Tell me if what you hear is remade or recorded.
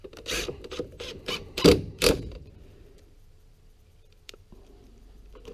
remade